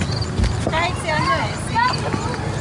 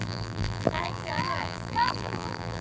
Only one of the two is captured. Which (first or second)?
first